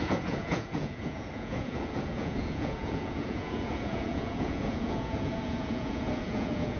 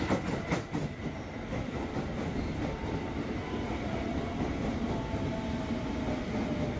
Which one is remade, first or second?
first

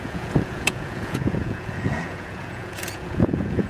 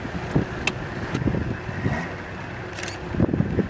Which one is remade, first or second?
first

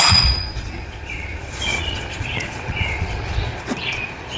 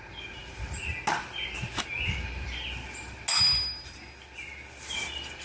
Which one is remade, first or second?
first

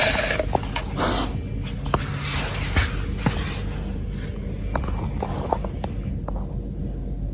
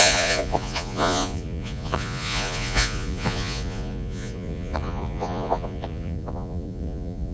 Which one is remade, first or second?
second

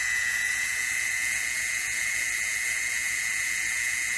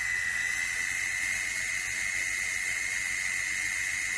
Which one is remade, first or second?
first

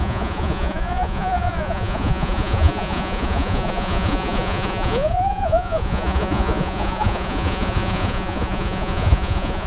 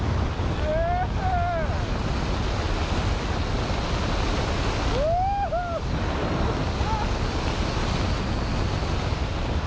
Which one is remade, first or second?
first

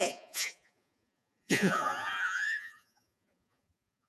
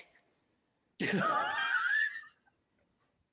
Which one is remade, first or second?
first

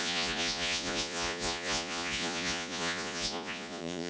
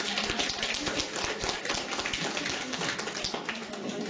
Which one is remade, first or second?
first